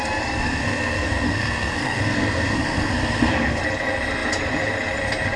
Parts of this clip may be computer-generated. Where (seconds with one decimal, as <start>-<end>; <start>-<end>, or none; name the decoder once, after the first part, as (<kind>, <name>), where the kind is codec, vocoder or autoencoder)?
0.4-3.6 (codec, SNAC)